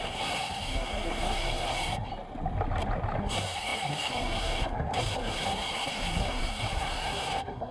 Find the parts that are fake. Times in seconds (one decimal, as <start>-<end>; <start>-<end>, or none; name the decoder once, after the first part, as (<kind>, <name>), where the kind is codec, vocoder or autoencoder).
0.0-2.1 (codec, SNAC); 3.2-7.7